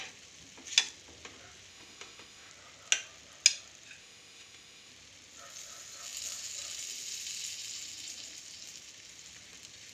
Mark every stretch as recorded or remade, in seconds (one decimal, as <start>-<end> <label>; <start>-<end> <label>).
0.0-1.7 recorded; 1.7-2.5 remade; 2.5-4.0 recorded; 4.0-4.9 remade; 4.9-9.9 recorded